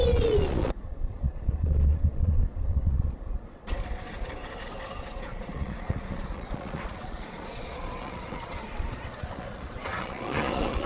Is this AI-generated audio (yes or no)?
yes